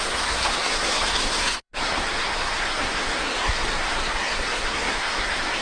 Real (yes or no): no